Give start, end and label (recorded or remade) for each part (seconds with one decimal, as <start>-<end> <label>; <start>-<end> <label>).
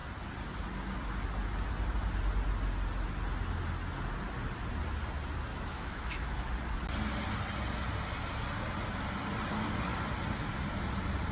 0.0-5.5 recorded; 5.5-6.5 remade; 6.5-11.3 recorded